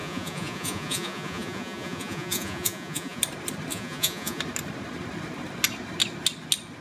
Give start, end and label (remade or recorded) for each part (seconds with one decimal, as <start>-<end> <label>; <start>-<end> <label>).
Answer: 0.0-3.2 remade; 3.2-3.7 recorded; 3.7-4.4 remade; 4.4-6.8 recorded